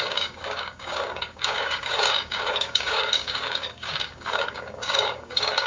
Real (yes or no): no